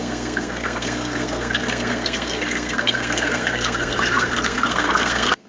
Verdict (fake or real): fake